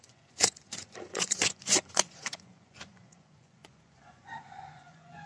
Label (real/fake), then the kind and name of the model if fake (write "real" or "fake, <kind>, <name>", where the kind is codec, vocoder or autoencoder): fake, vocoder, Vocos